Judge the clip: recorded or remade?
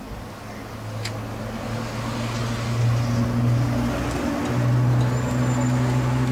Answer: recorded